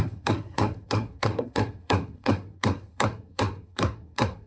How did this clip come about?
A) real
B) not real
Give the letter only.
B